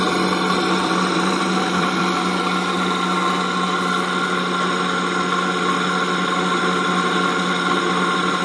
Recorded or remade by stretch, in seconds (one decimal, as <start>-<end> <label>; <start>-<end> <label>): 0.0-0.8 recorded; 0.8-2.0 remade; 2.0-8.4 recorded

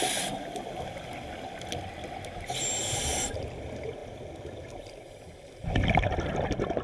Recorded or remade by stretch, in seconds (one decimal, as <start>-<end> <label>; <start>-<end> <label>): 0.0-4.0 recorded; 4.0-4.5 remade; 4.5-6.8 recorded

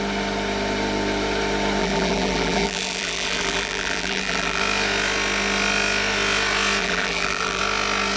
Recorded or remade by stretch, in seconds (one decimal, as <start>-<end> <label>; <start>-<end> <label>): 0.0-1.8 recorded; 1.8-4.6 remade; 4.6-6.8 recorded; 6.8-7.6 remade; 7.6-8.2 recorded

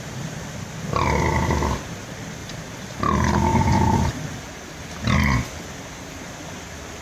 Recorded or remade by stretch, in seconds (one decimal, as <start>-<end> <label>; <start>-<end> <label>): 0.0-2.4 recorded; 2.4-3.0 remade; 3.0-3.5 recorded; 3.5-4.2 remade; 4.2-7.0 recorded

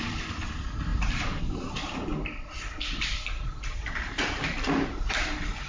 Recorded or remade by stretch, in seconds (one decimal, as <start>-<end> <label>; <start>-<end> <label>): 0.0-5.7 remade

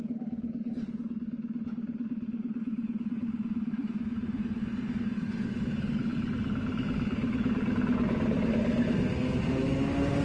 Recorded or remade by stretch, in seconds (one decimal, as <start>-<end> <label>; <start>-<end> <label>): 0.0-10.2 recorded

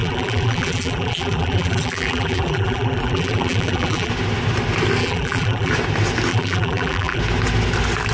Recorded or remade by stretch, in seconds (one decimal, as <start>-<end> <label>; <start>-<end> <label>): 0.0-4.1 remade; 4.1-5.0 recorded; 5.0-5.7 remade; 5.7-6.3 recorded; 6.3-7.2 remade; 7.2-8.1 recorded